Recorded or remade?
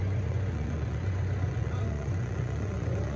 remade